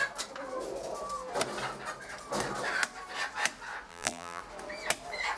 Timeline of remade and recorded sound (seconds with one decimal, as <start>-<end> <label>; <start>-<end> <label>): 0.0-3.9 recorded; 3.9-4.4 remade; 4.4-5.4 recorded